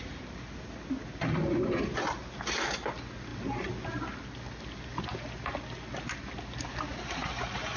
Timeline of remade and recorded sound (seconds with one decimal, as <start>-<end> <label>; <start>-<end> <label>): 0.0-7.8 recorded